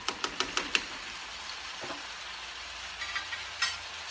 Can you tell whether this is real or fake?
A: real